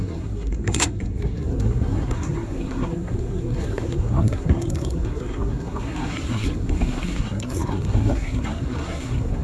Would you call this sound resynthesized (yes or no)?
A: yes